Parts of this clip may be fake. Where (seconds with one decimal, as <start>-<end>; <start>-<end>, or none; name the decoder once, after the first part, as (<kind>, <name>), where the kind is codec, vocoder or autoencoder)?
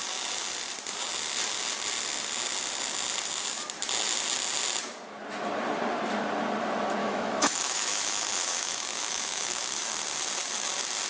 7.0-9.8 (autoencoder, DAC-VAE)